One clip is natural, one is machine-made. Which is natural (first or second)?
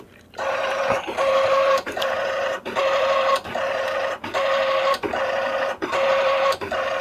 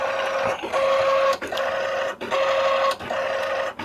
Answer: second